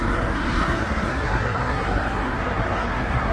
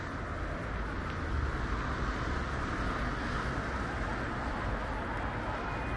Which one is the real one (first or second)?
second